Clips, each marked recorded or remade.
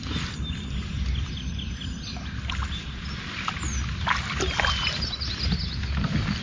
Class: remade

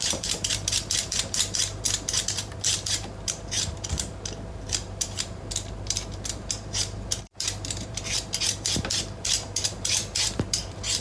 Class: remade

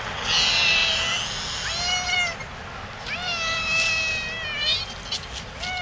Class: recorded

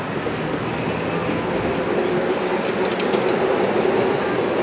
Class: recorded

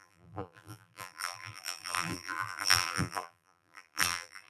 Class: remade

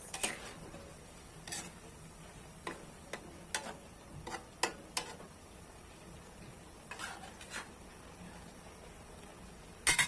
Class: recorded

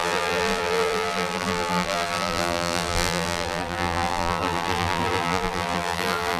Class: remade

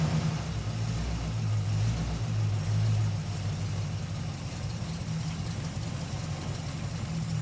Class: recorded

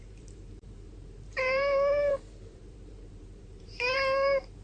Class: remade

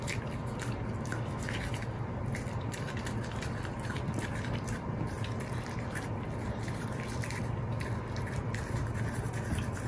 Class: remade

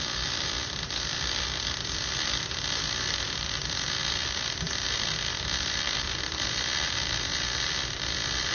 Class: remade